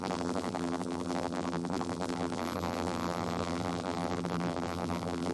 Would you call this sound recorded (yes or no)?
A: no